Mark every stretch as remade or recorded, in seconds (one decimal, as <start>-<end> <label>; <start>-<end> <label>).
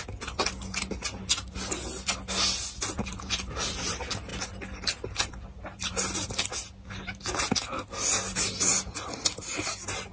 0.0-10.1 recorded